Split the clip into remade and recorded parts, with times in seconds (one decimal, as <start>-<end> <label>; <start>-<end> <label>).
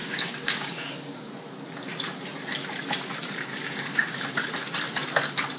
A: 0.0-1.3 remade; 1.3-3.5 recorded; 3.5-4.5 remade; 4.5-5.6 recorded